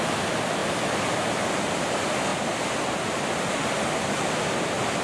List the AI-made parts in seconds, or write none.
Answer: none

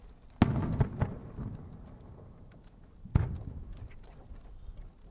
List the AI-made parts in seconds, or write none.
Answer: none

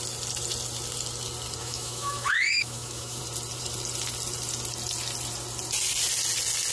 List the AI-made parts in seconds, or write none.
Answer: 1.6-3.2 (autoencoder, DAC-VAE)

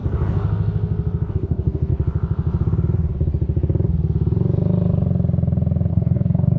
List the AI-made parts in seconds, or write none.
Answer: 1.3-1.9 (codec, DAC); 5.9-6.6